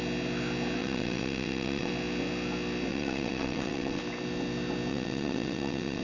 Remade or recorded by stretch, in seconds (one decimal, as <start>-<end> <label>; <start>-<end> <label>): 0.0-0.8 recorded; 0.8-1.9 remade; 1.9-2.9 recorded; 2.9-4.0 remade; 4.0-4.9 recorded; 4.9-6.0 remade

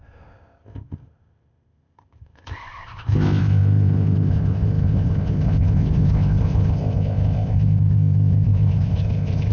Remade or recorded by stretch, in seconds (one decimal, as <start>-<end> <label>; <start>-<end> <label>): 0.0-9.5 remade

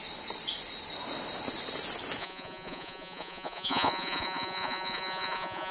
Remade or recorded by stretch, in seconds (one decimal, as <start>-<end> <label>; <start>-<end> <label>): 0.0-2.2 recorded; 2.2-5.7 remade

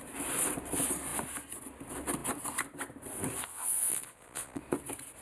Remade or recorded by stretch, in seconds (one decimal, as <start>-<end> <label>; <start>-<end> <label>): 0.0-3.5 recorded; 3.5-4.6 remade; 4.6-5.2 recorded

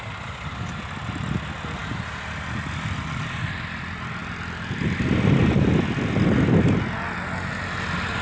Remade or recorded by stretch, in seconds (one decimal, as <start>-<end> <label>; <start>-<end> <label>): 0.0-8.2 recorded

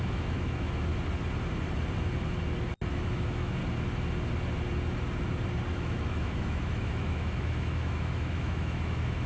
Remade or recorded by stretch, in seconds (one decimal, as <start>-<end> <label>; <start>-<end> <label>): 0.0-0.9 remade; 0.9-2.9 recorded; 2.9-3.6 remade; 3.6-5.7 recorded; 5.7-9.3 remade

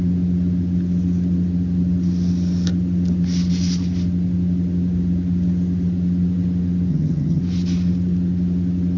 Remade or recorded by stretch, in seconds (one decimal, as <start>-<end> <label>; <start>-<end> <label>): 0.0-6.9 recorded; 6.9-7.4 remade; 7.4-9.0 recorded